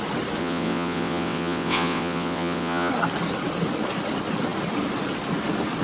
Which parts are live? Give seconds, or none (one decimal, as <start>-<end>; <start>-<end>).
0.0-0.4; 2.9-5.8